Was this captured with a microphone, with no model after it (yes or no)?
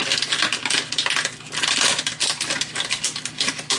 yes